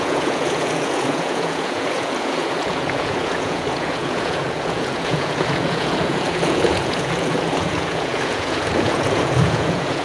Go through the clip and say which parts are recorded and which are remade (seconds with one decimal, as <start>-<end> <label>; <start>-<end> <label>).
0.0-10.0 remade